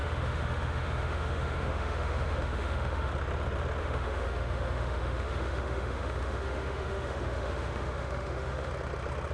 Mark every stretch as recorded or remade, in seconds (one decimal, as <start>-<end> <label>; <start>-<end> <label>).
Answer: 0.0-3.1 remade; 3.1-3.8 recorded; 3.8-8.7 remade; 8.7-9.3 recorded